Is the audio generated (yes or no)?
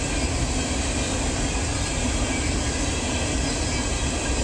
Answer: no